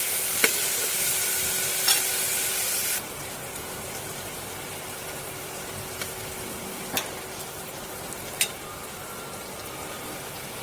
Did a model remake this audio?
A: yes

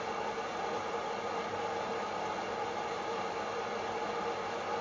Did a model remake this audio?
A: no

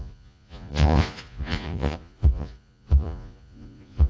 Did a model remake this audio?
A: yes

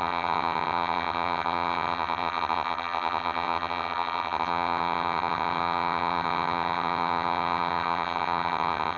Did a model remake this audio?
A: yes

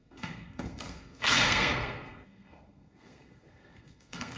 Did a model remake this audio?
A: yes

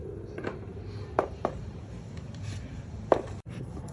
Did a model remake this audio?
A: yes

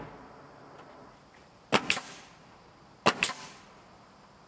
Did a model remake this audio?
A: no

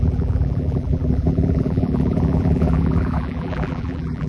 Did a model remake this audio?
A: yes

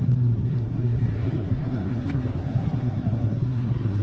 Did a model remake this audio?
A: yes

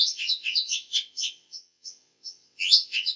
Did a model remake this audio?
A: yes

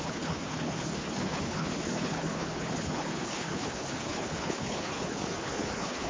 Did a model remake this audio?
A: yes